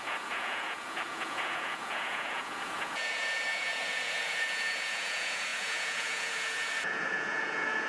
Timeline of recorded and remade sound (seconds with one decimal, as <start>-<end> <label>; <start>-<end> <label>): 0.0-7.9 remade